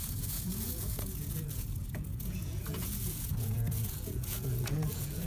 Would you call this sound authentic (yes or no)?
no